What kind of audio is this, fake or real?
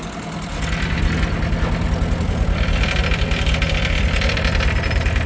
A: real